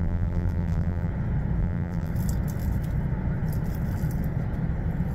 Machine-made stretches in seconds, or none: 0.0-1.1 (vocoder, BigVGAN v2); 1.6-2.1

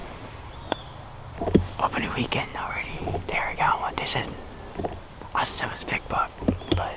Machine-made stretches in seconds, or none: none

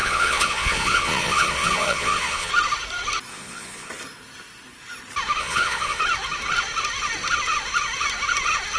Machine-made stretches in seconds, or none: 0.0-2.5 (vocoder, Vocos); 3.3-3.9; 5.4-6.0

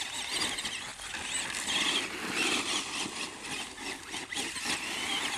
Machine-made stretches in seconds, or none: 0.9-1.4 (vocoder, BigVGAN v2)

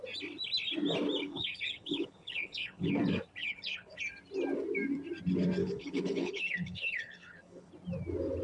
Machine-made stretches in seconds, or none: 1.2-3.0 (codec, HILCodec); 3.4-4.0; 5.6-7.7